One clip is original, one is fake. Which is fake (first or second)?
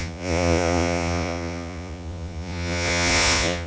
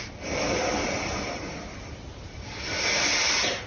first